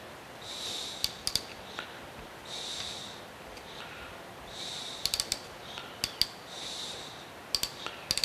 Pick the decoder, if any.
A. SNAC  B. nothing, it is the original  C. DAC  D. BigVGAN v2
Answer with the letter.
B